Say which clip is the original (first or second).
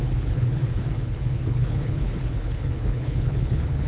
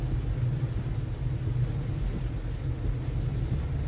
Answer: second